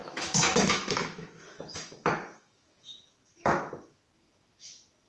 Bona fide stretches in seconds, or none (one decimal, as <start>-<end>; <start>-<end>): none